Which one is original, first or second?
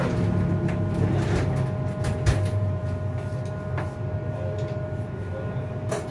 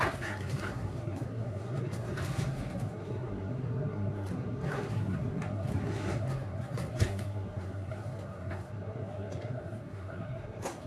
first